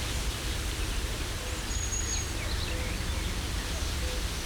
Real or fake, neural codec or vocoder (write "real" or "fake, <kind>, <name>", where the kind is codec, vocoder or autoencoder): real